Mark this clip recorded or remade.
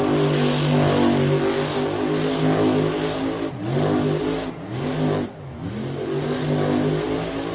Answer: recorded